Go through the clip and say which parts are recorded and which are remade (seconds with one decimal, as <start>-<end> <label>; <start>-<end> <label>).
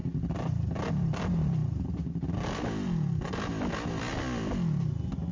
0.0-5.3 recorded